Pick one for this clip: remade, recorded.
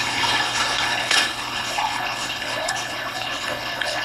remade